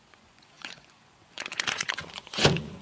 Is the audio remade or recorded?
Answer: remade